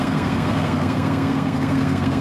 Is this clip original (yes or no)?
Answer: no